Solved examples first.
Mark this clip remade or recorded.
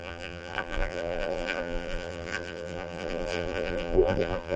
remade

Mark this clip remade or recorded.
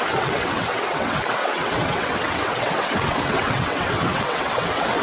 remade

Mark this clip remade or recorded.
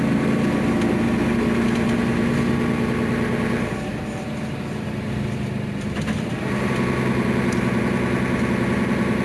recorded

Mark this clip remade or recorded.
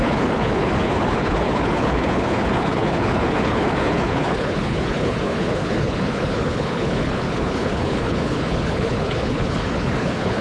remade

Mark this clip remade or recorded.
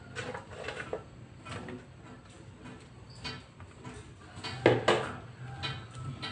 recorded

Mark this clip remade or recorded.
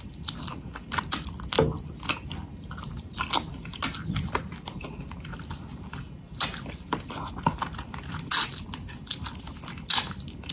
recorded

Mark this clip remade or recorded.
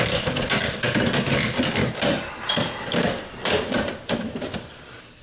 remade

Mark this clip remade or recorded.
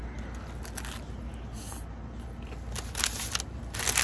recorded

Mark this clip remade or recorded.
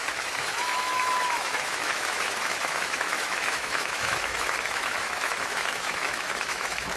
remade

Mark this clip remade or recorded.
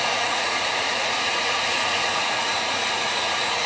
remade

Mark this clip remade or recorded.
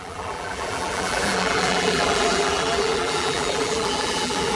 remade